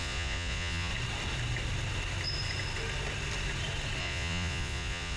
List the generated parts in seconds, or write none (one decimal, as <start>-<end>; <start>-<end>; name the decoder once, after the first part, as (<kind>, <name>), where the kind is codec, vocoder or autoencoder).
0.0-0.9 (vocoder, Vocos); 4.0-5.2